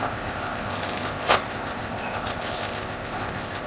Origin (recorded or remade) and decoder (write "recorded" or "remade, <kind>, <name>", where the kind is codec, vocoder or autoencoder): remade, codec, ZipCodec